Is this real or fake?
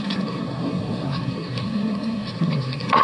fake